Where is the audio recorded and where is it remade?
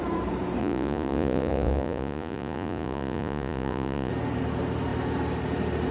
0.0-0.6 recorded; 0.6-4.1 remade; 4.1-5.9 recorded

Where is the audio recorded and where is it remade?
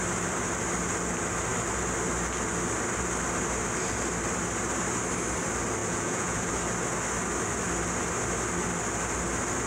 0.0-5.8 recorded; 5.8-6.5 remade; 6.5-9.7 recorded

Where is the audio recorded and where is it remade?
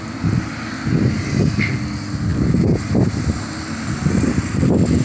0.0-5.0 recorded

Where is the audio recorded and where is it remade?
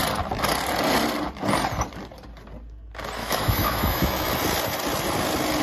0.0-3.2 recorded; 3.2-4.3 remade; 4.3-5.6 recorded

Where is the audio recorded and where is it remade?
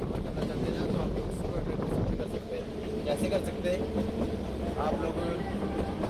0.0-1.4 remade; 1.4-2.0 recorded; 2.0-2.8 remade; 2.8-4.2 recorded; 4.2-6.1 remade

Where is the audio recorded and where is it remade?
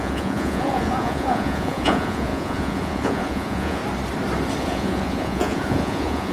0.0-3.8 remade; 3.8-4.6 recorded; 4.6-6.3 remade